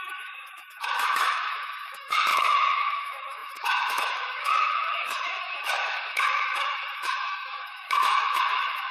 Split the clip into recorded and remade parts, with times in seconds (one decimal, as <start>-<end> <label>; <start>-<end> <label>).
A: 0.0-8.9 remade